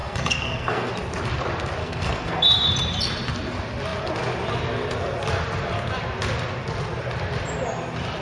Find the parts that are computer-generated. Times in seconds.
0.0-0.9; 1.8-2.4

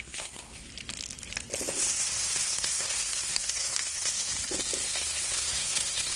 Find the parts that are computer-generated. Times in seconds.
0.0-0.7; 1.7-4.3; 4.8-6.2

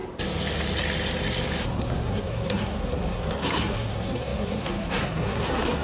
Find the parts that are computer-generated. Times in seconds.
1.6-5.8